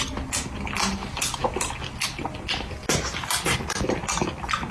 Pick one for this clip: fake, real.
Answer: real